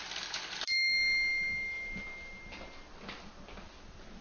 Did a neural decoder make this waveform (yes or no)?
no